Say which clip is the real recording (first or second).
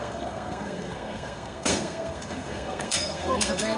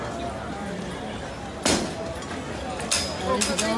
second